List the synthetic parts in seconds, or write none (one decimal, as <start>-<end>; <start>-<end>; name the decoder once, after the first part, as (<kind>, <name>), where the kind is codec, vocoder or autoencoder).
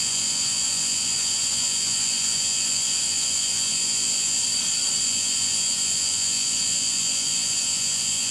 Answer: 0.0-4.4 (vocoder, Vocos); 5.0-8.3